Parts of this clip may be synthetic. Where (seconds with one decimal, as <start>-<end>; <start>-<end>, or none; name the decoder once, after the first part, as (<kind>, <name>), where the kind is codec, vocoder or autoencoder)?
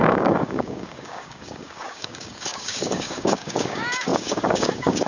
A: 0.0-5.1 (codec, DAC)